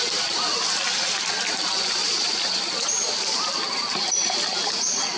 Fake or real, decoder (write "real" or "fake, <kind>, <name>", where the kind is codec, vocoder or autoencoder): real